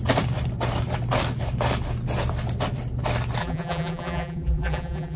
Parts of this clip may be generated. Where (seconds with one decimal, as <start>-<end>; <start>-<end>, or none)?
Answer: 3.4-5.2